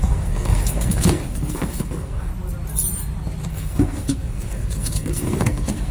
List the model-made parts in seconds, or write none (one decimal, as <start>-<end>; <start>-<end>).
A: 0.0-2.3; 3.5-5.9